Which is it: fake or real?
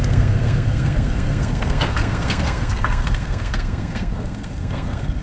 fake